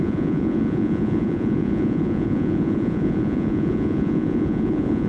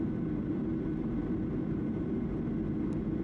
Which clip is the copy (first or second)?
first